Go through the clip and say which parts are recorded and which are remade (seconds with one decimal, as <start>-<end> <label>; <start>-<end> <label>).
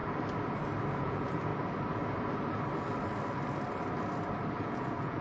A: 0.0-1.0 recorded; 1.0-1.5 remade; 1.5-4.6 recorded; 4.6-5.2 remade